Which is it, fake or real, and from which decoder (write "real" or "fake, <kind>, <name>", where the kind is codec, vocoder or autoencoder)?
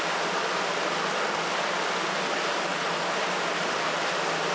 real